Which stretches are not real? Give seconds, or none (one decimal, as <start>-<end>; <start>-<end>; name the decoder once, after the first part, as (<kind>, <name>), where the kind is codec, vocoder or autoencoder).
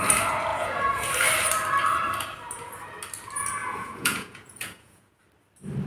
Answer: 0.5-1.1 (vocoder, Vocos); 3.6-5.2